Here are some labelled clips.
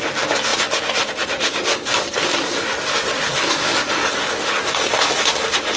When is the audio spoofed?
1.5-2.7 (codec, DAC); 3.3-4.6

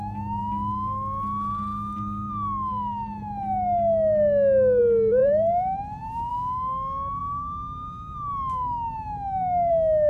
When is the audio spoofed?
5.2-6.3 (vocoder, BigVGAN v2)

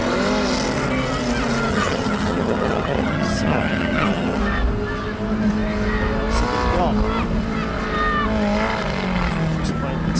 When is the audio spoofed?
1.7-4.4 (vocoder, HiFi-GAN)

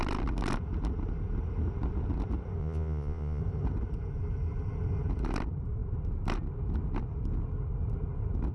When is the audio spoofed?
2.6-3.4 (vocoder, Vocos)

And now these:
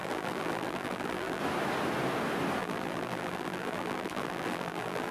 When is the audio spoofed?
0.0-1.4 (vocoder, BigVGAN v2); 2.6-5.1

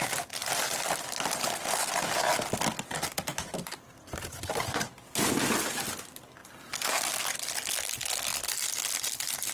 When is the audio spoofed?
none